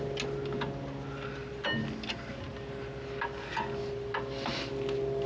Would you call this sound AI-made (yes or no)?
no